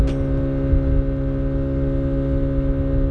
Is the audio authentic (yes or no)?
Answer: yes